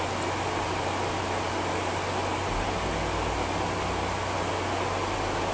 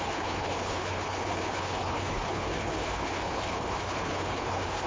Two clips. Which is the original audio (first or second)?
first